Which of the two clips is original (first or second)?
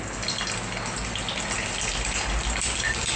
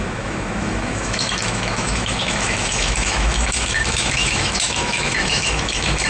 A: first